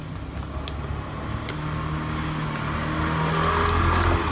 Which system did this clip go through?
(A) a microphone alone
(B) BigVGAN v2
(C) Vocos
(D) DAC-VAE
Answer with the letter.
A